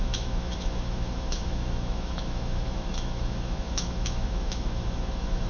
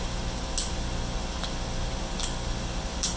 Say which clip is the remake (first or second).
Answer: first